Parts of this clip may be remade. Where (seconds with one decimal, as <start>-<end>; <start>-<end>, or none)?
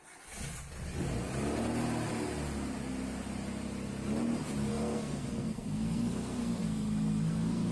4.7-7.7